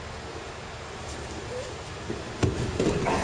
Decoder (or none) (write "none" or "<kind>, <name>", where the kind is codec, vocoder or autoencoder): none